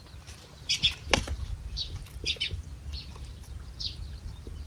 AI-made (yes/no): no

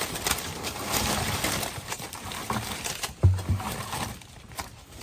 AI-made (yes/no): no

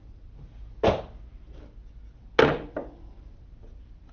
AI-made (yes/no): no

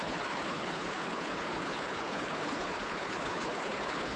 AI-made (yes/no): yes